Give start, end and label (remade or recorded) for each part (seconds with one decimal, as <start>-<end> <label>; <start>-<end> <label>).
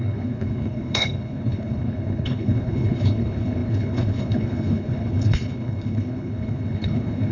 0.0-7.3 remade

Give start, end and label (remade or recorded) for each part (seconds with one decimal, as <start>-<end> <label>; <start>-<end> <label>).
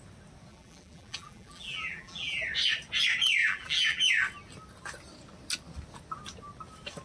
0.0-0.5 recorded; 0.5-2.4 remade; 2.4-3.4 recorded; 3.4-4.1 remade; 4.1-7.0 recorded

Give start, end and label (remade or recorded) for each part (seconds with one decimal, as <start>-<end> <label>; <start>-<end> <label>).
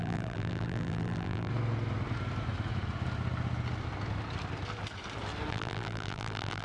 0.0-1.5 remade; 1.5-5.5 recorded; 5.5-6.6 remade